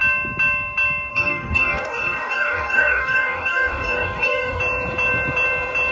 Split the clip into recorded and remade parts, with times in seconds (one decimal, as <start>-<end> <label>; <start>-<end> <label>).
0.0-1.1 recorded; 1.1-4.6 remade; 4.6-5.9 recorded